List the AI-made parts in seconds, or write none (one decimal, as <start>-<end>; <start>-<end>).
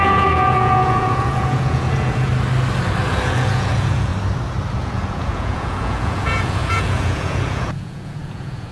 0.0-2.3; 3.0-4.1; 4.7-8.7